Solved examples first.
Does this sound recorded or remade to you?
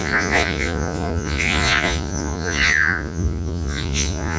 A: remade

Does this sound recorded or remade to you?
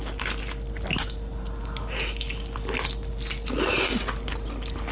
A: recorded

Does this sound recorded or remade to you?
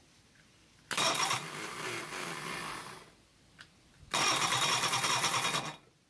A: recorded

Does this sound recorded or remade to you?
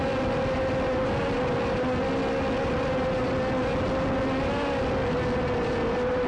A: recorded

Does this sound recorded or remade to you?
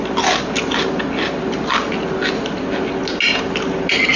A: recorded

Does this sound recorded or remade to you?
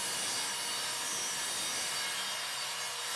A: recorded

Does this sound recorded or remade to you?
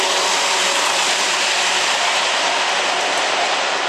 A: recorded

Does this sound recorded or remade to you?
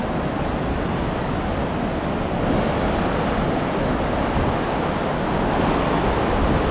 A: recorded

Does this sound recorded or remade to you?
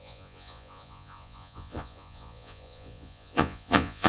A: remade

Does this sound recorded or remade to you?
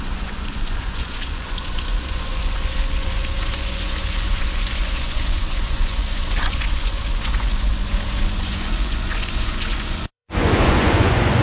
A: remade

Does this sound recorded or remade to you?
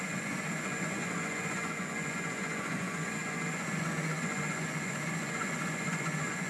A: remade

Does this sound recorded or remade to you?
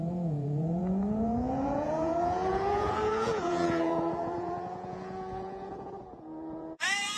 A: remade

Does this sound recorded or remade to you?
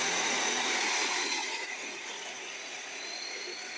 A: remade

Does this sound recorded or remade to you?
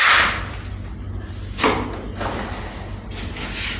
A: recorded